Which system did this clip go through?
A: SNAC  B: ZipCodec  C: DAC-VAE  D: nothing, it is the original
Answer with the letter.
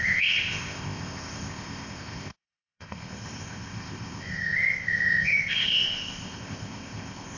B